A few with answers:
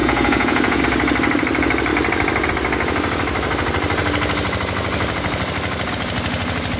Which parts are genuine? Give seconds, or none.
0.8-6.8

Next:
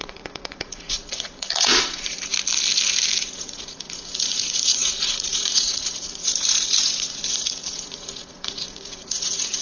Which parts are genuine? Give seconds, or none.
2.3-3.2

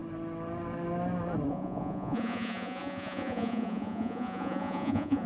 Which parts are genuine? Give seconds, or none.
0.0-1.5

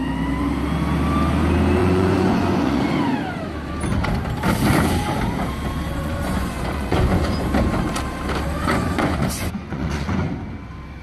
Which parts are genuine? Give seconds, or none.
0.0-1.8; 2.8-5.9; 7.3-8.6; 10.2-11.0

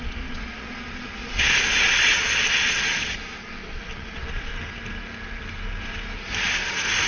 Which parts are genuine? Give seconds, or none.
4.5-7.1